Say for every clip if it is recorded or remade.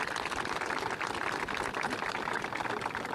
recorded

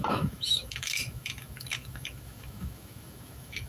remade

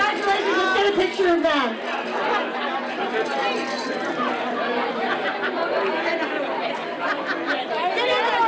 recorded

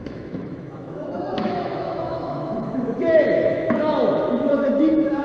remade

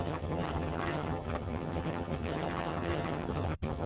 remade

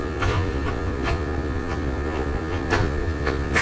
remade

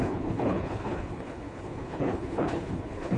remade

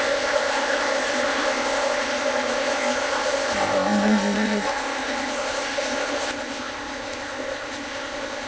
remade